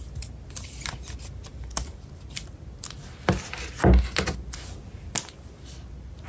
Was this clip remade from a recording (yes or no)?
no